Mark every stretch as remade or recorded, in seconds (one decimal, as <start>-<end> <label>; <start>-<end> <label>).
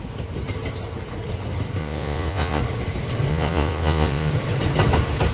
0.0-1.8 recorded; 1.8-2.6 remade; 2.6-3.3 recorded; 3.3-4.3 remade; 4.3-5.3 recorded